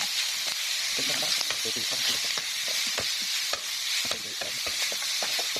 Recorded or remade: recorded